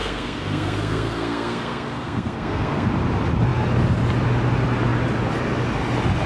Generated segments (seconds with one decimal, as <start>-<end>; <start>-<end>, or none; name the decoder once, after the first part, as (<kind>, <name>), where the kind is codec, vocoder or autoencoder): 0.0-2.9 (codec, SNAC)